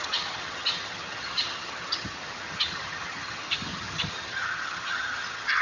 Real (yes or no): no